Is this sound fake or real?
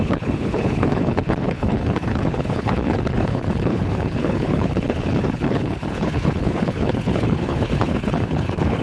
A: fake